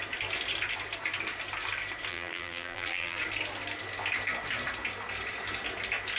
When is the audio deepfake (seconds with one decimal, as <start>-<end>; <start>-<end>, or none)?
2.1-3.2